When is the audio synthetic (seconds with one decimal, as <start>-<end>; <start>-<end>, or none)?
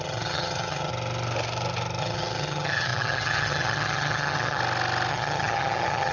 0.0-0.9; 2.0-4.6; 5.1-6.1